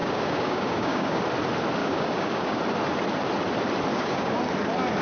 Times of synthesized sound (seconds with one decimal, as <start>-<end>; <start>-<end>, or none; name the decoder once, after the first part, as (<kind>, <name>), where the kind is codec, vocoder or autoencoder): 0.0-1.2 (codec, DAC); 1.8-2.6; 3.9-4.4